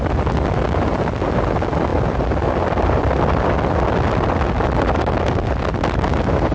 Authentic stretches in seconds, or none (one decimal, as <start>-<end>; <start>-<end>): 0.0-6.5